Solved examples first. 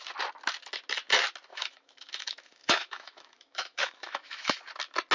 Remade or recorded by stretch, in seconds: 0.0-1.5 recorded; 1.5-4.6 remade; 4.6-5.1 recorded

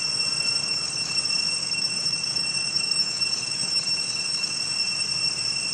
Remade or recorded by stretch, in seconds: 0.0-0.6 recorded; 0.6-1.2 remade; 1.2-1.6 recorded; 1.6-4.6 remade; 4.6-5.7 recorded

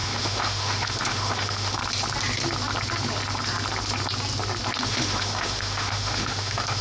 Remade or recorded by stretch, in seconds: 0.0-1.8 remade; 1.8-4.8 recorded; 4.8-6.8 remade

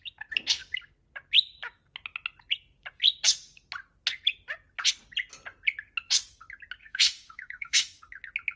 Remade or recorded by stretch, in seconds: 0.0-6.8 recorded; 6.8-8.0 remade; 8.0-8.6 recorded

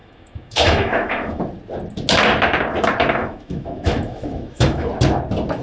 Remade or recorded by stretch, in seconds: 0.0-1.4 remade; 1.4-3.2 recorded; 3.2-4.9 remade; 4.9-5.6 recorded